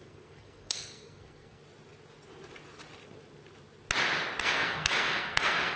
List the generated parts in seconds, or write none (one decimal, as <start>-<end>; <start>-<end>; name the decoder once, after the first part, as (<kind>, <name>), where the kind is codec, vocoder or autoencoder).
0.0-1.6 (codec, SNAC); 4.4-5.8